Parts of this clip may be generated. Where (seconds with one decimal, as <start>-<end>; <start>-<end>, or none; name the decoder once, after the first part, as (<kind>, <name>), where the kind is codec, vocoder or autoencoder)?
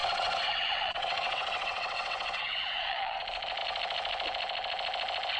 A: 0.0-3.2 (vocoder, WaveNeXt)